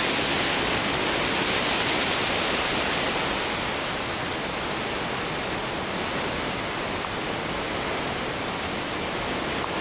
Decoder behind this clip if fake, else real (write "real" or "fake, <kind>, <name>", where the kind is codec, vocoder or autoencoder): real